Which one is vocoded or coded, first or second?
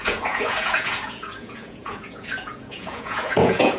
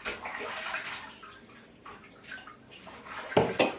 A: first